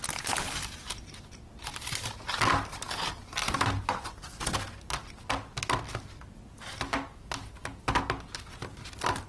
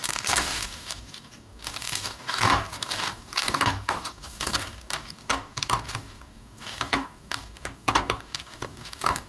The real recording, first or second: first